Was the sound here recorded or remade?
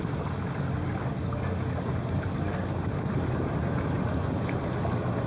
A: recorded